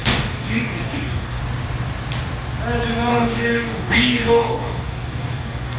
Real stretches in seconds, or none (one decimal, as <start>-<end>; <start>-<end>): 1.4-3.1